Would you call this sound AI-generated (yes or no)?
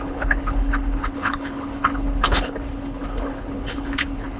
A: yes